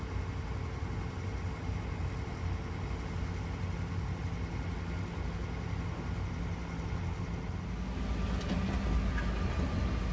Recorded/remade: recorded